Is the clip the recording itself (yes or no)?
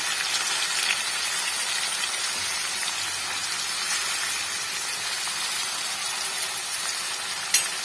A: yes